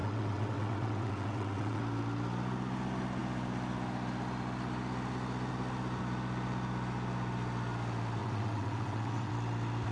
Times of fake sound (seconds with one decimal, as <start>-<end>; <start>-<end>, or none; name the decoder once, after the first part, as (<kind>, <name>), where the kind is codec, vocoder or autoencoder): 0.0-1.8 (vocoder, WaveNeXt); 8.2-9.3